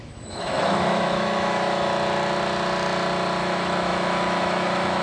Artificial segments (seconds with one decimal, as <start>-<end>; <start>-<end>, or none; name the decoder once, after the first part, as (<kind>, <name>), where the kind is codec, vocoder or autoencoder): 0.0-1.9 (autoencoder, DAC-VAE); 3.4-5.0